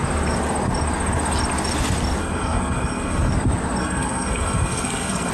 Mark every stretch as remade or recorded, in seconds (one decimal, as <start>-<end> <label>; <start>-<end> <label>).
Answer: 0.0-2.2 recorded; 2.2-3.3 remade; 3.3-3.8 recorded; 3.8-5.3 remade